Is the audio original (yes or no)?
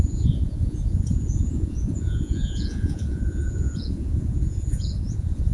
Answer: no